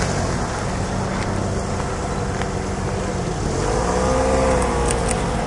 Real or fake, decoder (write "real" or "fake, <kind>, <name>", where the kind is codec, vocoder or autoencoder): real